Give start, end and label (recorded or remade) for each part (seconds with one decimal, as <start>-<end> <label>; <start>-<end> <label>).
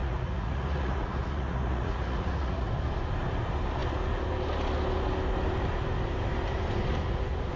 0.0-2.7 remade; 2.7-7.6 recorded